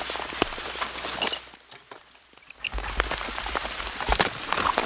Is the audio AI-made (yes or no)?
no